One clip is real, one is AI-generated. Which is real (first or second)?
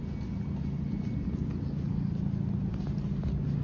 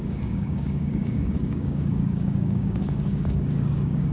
first